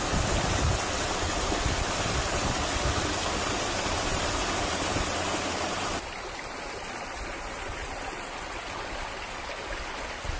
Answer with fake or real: real